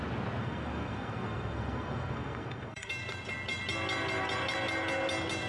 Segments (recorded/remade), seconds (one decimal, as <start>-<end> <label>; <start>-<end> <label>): 0.0-0.4 recorded; 0.4-2.9 remade; 2.9-5.5 recorded